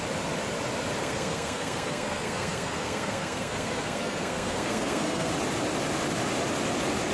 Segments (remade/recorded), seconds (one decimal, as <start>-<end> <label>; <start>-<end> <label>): 0.0-1.0 recorded; 1.0-5.3 remade; 5.3-7.1 recorded